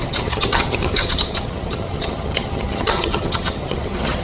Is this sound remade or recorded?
remade